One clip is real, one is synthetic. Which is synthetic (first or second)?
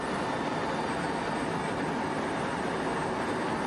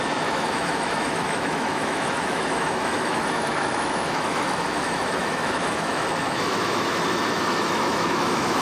second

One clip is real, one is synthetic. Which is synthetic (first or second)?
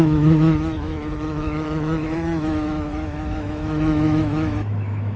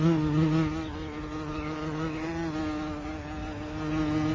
first